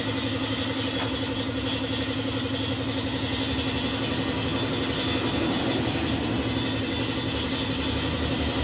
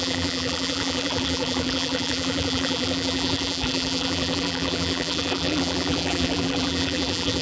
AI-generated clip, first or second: second